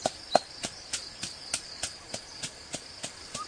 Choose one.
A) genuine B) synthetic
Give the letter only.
A